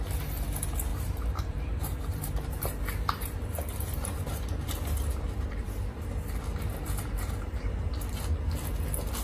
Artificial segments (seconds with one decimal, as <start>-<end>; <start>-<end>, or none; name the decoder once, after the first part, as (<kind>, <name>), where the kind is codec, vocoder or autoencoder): 0.9-6.0 (vocoder, BigVGAN v2); 6.5-7.9